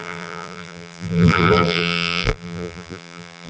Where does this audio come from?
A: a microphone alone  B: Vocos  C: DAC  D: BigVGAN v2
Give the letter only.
D